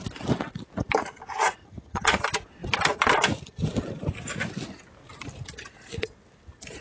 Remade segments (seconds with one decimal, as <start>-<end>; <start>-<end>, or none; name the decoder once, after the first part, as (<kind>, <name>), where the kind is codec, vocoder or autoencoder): 1.6-2.2 (vocoder, HiFi-GAN)